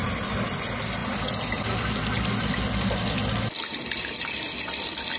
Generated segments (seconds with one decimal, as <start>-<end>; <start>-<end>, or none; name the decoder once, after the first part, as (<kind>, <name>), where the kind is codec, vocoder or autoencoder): none